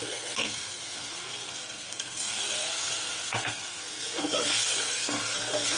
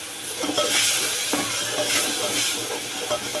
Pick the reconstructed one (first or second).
first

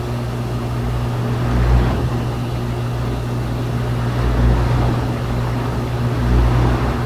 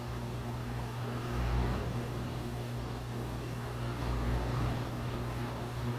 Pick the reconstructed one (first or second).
second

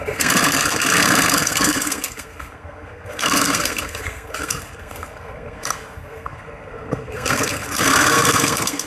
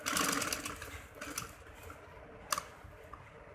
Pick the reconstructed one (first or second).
first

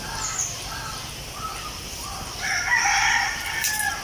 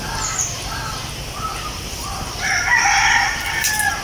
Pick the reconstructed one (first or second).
first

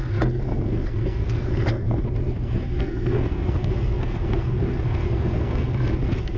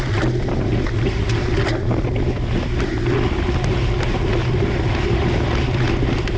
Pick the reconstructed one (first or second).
first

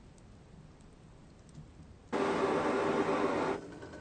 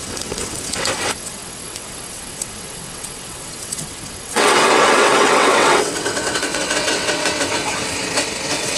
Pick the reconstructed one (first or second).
second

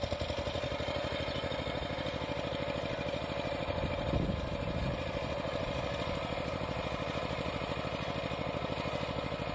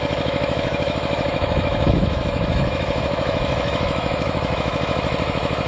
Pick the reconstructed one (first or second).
second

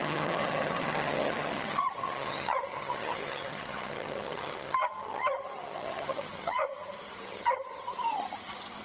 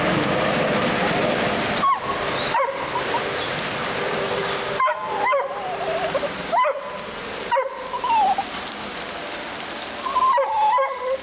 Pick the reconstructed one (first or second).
first